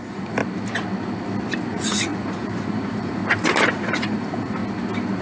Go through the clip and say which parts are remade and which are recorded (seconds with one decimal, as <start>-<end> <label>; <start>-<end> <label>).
0.0-0.4 remade; 0.4-1.7 recorded; 1.7-3.2 remade; 3.2-3.7 recorded; 3.7-4.6 remade; 4.6-5.2 recorded